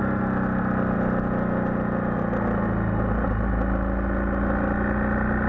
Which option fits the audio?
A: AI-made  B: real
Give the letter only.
B